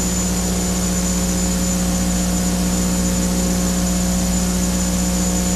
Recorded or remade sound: recorded